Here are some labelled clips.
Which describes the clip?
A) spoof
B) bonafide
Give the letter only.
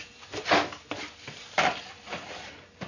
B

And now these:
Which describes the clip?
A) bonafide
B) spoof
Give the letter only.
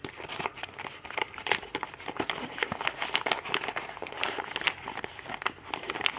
A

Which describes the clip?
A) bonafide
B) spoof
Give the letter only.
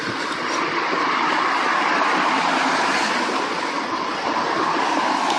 A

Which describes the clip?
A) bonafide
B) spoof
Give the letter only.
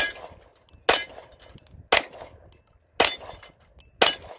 A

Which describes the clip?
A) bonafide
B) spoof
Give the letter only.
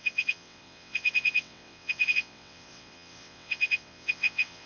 B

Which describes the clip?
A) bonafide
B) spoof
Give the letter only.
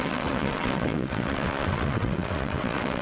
B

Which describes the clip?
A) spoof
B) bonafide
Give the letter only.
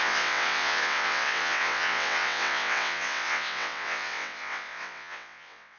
A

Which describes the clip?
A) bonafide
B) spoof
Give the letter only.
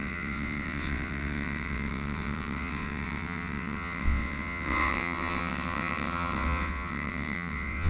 B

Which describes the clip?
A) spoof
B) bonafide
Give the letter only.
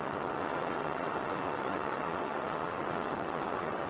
A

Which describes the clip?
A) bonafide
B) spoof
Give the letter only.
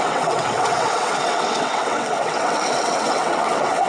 B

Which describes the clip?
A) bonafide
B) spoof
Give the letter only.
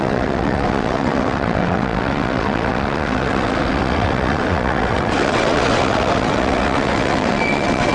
B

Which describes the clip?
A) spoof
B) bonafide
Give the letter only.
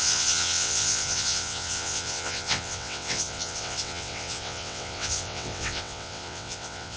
A